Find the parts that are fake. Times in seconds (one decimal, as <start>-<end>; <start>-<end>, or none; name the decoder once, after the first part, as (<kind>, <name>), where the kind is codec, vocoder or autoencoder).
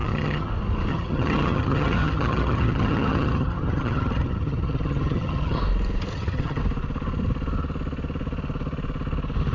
0.0-0.5 (vocoder, HiFi-GAN); 0.9-5.6; 6.1-6.6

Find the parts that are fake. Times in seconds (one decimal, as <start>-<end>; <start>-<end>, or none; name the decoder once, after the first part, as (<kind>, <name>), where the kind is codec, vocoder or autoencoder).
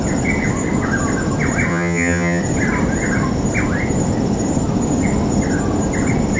1.7-2.4 (vocoder, HiFi-GAN)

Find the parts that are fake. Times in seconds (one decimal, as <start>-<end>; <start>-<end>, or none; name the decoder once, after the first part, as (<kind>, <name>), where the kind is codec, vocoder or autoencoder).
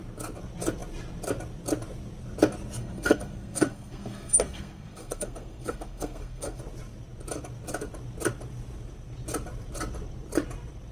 2.8-6.6 (codec, SNAC)